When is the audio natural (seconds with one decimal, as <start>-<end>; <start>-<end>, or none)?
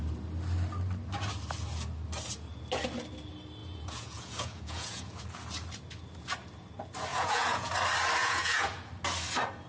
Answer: 0.0-3.6; 5.2-7.1; 7.7-8.2; 8.9-9.7